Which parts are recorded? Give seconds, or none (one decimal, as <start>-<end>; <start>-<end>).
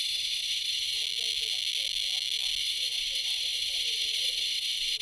1.0-2.6